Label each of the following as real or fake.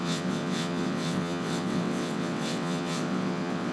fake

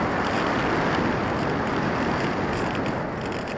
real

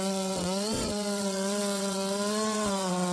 fake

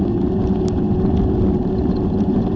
real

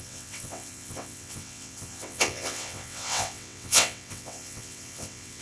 fake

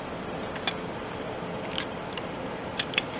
real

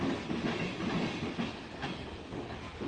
real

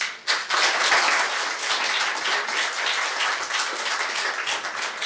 real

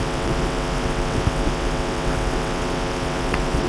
fake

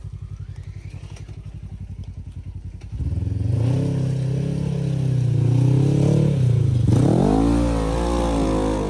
real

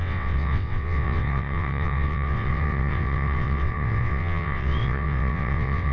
fake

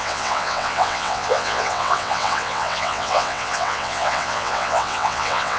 fake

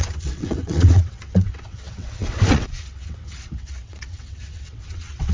fake